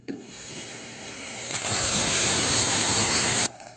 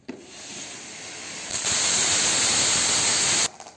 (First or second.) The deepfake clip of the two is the first